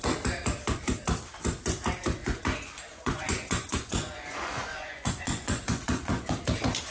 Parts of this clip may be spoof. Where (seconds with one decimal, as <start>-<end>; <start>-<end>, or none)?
2.2-6.3

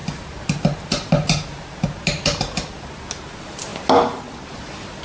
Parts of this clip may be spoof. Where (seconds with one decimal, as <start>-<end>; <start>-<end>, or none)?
none

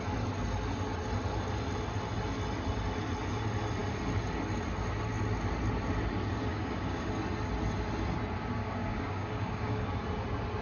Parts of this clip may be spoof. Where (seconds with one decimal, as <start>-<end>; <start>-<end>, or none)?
6.5-7.1; 8.6-9.9

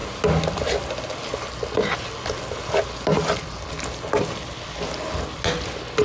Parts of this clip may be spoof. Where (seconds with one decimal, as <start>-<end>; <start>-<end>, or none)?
none

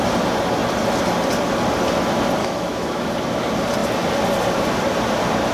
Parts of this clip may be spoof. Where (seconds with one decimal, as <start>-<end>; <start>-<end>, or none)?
2.4-3.1

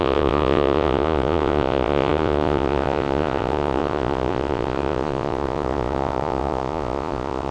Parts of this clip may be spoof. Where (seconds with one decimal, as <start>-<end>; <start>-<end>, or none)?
0.0-7.5

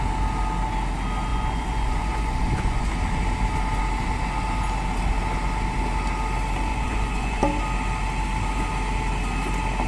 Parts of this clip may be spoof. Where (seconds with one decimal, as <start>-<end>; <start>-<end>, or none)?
1.3-2.9; 6.7-7.4

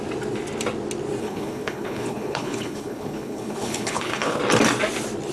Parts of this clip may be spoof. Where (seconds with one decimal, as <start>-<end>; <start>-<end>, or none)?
1.2-4.4